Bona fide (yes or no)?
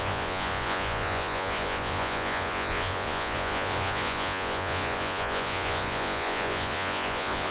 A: no